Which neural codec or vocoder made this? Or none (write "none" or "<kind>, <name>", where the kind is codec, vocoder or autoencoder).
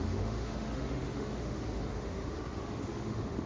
autoencoder, DAC-VAE